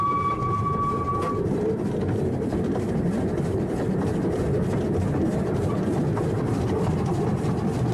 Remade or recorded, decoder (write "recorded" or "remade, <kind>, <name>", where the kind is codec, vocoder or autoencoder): recorded